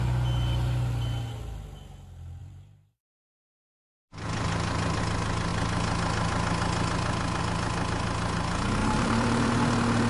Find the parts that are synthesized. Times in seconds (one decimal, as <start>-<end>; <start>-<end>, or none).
2.4-5.0; 8.8-9.5